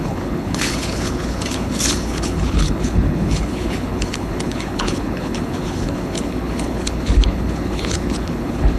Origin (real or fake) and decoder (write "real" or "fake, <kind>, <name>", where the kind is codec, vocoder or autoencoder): fake, codec, HILCodec